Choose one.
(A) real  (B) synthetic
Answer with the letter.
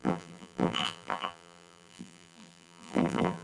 B